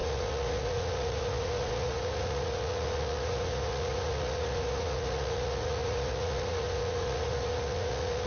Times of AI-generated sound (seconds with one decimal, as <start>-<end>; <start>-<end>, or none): 0.0-8.3